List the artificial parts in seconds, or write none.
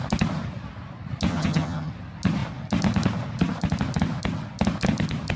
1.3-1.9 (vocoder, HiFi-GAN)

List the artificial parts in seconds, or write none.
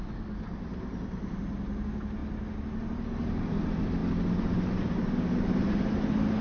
none